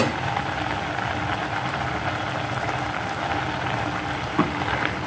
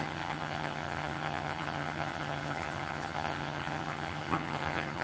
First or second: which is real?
first